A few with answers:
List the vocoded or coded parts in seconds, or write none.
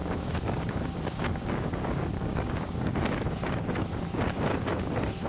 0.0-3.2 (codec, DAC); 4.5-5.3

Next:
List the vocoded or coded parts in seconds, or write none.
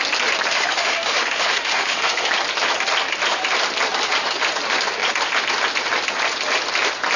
0.5-2.3 (autoencoder, DAC-VAE)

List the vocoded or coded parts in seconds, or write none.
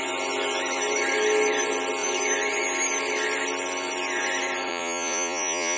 4.7-5.8 (vocoder, Vocos)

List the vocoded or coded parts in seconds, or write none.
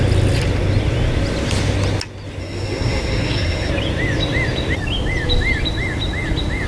2.4-3.7 (codec, SNAC)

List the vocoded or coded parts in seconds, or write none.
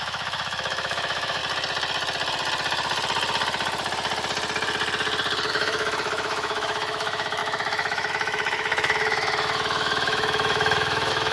0.0-1.4 (autoencoder, DAC-VAE); 5.5-11.3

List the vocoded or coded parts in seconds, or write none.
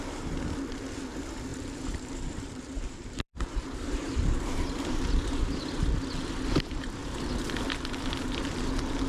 1.5-6.0 (vocoder, BigVGAN v2)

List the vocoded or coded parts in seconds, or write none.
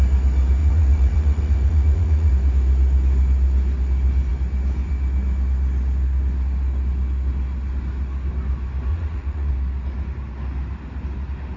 0.6-2.3 (vocoder, Vocos); 8.9-9.5